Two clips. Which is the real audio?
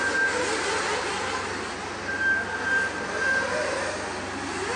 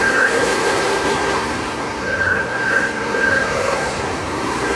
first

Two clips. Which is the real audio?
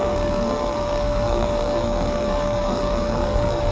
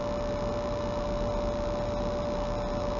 second